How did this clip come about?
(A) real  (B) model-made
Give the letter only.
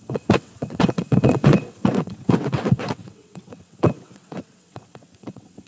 B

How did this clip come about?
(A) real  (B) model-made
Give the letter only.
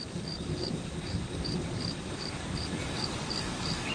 B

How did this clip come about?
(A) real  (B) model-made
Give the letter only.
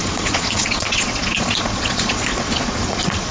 B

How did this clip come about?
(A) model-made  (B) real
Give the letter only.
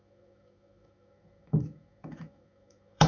A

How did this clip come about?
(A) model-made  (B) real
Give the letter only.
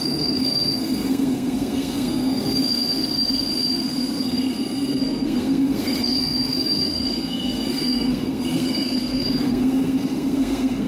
A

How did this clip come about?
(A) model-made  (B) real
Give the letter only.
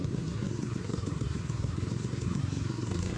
A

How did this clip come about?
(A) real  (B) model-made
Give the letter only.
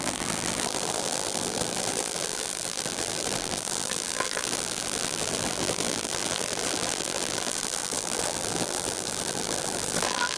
B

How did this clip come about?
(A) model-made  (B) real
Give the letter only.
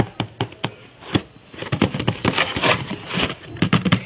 B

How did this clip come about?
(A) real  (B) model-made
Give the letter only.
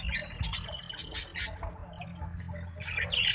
A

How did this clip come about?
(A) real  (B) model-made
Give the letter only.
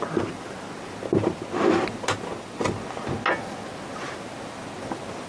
A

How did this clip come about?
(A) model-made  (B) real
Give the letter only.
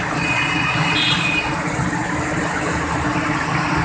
B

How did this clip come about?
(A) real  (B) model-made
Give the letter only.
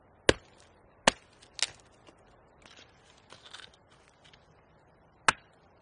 A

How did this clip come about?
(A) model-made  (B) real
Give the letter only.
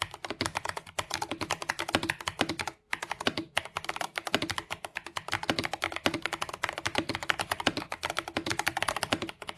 B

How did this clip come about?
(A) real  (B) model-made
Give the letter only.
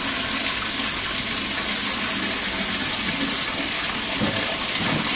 A